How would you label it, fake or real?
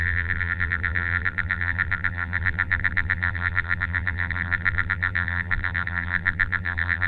fake